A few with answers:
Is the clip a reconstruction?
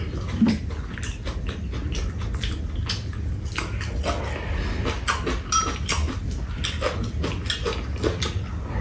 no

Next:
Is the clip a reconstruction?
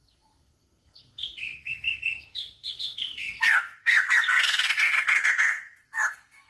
yes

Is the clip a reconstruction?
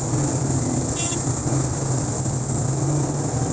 no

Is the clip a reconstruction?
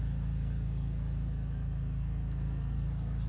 yes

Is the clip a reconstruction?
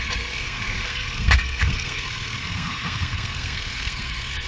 yes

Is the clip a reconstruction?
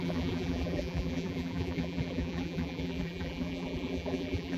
yes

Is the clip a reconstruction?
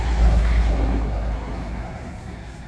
yes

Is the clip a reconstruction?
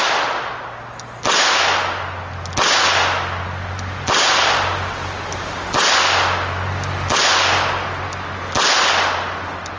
no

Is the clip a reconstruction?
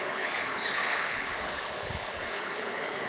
yes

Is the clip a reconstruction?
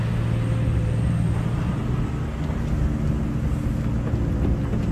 no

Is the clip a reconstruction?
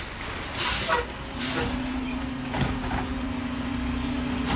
no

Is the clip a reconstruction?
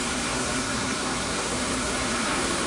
yes